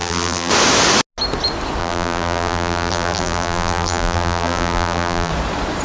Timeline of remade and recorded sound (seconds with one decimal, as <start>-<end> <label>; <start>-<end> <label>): 0.0-0.5 remade; 0.5-1.8 recorded; 1.8-5.3 remade; 5.3-5.8 recorded